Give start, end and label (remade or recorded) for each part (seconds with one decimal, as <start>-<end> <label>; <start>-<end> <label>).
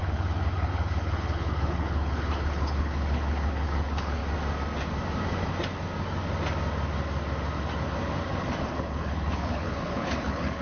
0.0-4.2 remade; 4.2-8.6 recorded; 8.6-10.6 remade